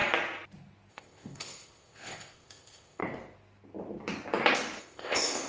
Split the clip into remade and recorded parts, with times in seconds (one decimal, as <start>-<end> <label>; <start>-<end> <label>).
0.0-0.9 recorded; 0.9-3.0 remade; 3.0-4.8 recorded; 4.8-5.5 remade